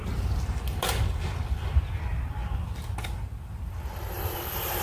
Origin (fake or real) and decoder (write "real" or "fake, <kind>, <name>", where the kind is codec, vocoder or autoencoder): real